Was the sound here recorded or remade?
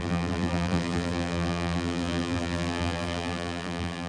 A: remade